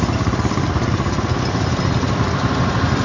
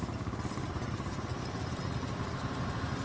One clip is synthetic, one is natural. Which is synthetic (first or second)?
first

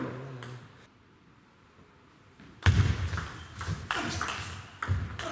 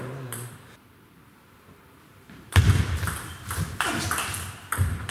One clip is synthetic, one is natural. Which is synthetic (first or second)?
second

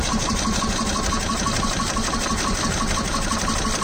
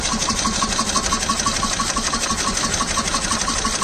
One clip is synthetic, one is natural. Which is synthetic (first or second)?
second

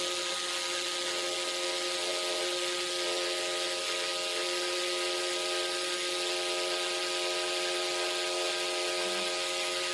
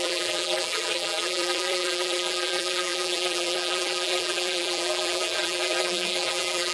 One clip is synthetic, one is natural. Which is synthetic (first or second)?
second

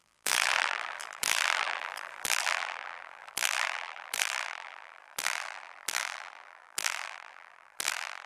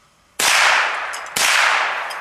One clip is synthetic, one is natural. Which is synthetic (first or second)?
first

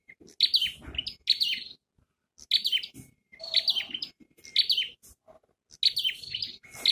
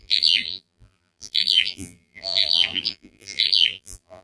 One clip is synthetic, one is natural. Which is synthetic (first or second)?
second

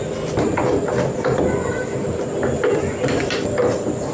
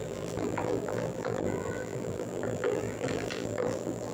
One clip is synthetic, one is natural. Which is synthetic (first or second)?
second